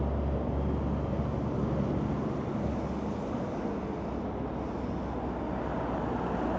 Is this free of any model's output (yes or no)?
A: yes